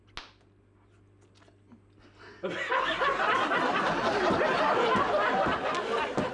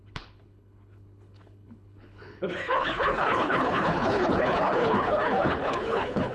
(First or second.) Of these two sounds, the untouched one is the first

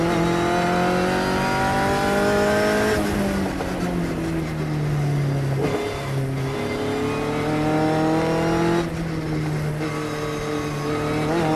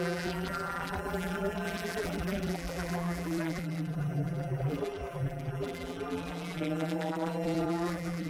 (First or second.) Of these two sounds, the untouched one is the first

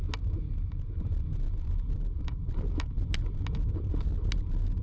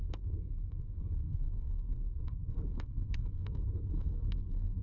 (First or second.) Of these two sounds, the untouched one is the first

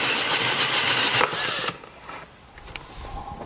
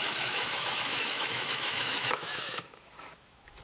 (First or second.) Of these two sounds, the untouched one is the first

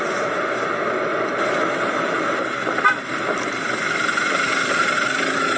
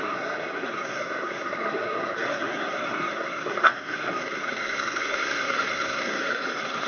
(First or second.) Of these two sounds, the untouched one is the first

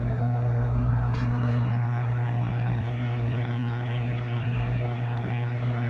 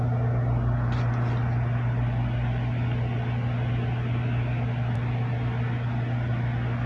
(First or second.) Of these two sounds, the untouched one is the second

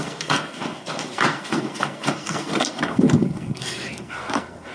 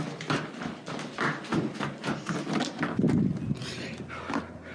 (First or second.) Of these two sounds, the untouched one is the second